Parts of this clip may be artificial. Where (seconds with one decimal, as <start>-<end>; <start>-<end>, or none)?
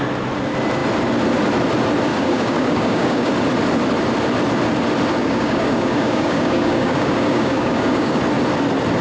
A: 2.1-3.3; 5.2-8.2